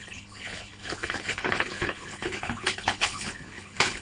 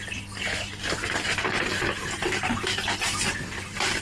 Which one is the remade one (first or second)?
first